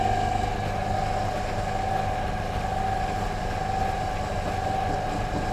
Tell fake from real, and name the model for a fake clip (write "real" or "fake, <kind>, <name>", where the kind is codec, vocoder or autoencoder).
real